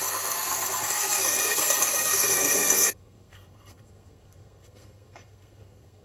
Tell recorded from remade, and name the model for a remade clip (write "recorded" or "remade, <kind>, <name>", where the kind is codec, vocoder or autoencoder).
remade, codec, SNAC